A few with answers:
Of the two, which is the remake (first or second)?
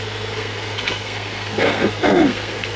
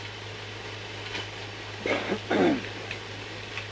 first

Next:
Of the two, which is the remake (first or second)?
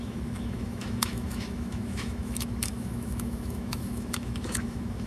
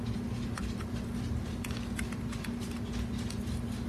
first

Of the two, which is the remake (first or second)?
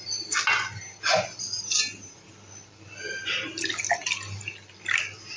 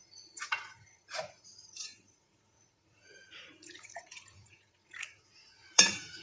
second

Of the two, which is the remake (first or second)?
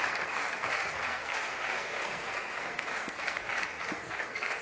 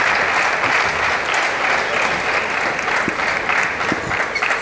first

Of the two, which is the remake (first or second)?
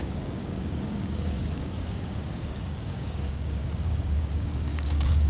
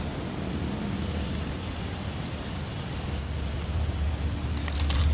first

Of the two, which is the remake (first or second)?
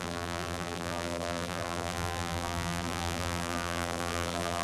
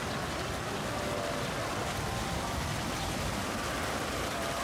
first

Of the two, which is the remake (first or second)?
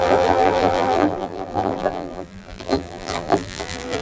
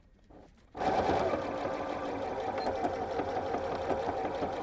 first